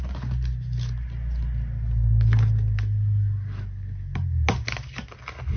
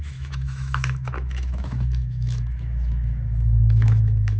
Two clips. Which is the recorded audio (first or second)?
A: first